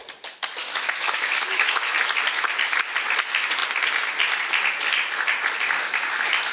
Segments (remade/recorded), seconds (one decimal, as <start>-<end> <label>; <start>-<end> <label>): 0.0-0.6 recorded; 0.6-1.9 remade; 1.9-6.5 recorded

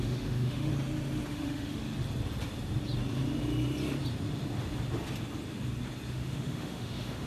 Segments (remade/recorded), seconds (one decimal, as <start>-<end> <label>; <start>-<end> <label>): 0.0-0.7 remade; 0.7-1.3 recorded; 1.3-1.8 remade; 1.8-6.1 recorded; 6.1-7.3 remade

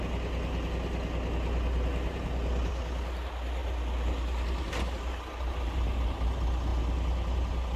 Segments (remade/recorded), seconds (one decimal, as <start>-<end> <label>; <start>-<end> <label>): 0.0-7.8 recorded

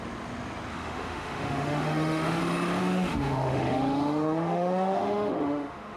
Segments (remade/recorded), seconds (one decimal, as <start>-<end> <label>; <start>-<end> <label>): 0.0-0.7 recorded; 0.7-2.4 remade; 2.4-2.8 recorded; 2.8-6.0 remade